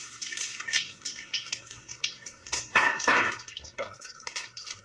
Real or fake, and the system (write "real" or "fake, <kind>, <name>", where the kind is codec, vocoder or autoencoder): fake, codec, SNAC